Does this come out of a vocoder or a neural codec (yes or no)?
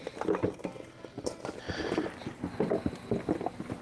no